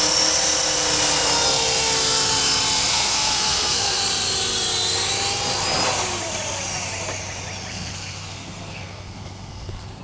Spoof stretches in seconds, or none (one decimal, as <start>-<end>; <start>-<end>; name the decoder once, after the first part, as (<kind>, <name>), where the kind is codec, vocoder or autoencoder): 2.9-4.0 (codec, SNAC); 7.7-10.0